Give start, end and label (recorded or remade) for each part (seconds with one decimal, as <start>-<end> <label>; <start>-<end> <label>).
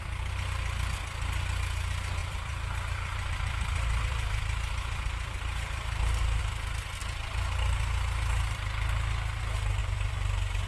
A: 0.0-2.2 recorded; 2.2-6.4 remade; 6.4-9.8 recorded; 9.8-10.7 remade